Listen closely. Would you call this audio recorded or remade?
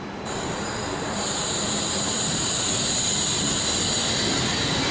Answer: remade